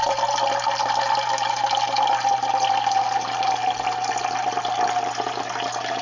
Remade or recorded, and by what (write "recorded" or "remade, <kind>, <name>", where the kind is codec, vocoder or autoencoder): recorded